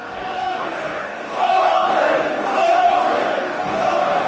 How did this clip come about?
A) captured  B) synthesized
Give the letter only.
B